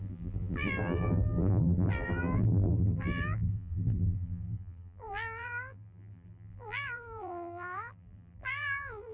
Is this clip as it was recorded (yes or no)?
no